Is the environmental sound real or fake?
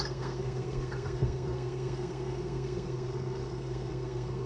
fake